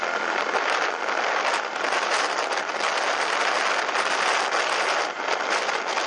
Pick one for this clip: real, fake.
real